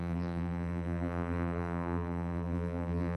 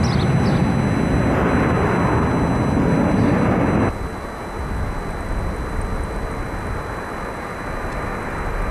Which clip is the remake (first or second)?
first